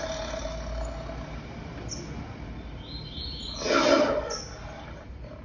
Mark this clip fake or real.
real